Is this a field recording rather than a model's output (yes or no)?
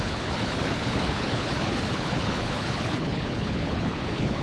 no